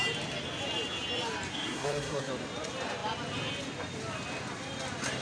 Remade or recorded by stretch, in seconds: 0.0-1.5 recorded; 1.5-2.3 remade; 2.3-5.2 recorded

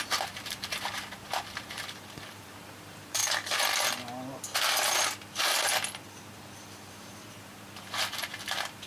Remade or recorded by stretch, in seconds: 0.0-3.2 remade; 3.2-6.9 recorded; 6.9-8.9 remade